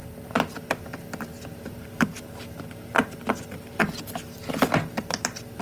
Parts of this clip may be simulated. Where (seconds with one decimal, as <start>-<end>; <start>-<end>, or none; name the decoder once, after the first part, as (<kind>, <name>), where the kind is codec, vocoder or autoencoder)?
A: none